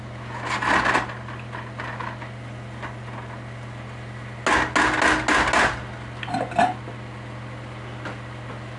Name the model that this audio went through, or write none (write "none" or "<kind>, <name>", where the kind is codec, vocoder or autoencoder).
none